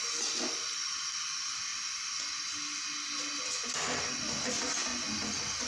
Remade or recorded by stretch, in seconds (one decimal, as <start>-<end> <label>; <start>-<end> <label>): 0.0-4.9 recorded; 4.9-5.7 remade